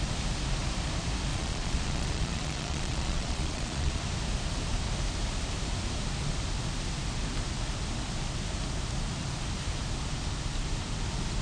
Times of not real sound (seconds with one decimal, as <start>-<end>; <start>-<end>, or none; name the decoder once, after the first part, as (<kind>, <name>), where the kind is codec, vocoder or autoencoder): 1.3-4.0 (vocoder, Vocos)